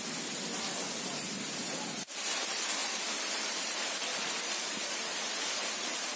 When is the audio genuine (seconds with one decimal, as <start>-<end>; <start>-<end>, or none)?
0.0-6.2